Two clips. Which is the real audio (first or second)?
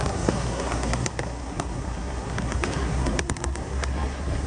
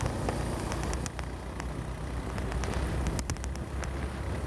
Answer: second